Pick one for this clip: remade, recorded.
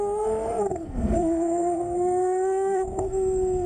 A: remade